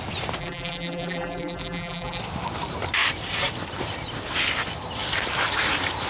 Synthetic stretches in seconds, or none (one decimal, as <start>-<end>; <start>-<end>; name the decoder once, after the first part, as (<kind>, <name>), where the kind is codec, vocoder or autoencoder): 0.4-2.2 (vocoder, BigVGAN v2)